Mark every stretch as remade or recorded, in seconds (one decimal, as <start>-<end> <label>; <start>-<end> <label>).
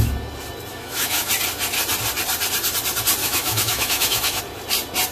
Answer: 0.0-0.7 recorded; 0.7-1.3 remade; 1.3-3.2 recorded; 3.2-4.4 remade; 4.4-5.1 recorded